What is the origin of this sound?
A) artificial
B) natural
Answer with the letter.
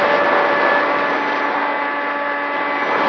B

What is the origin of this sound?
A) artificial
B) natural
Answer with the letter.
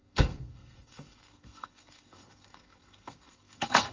A